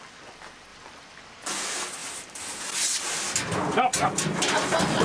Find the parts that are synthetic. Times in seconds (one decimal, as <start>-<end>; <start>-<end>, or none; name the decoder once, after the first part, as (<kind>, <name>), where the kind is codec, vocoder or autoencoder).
0.7-1.6 (vocoder, BigVGAN v2); 2.0-3.2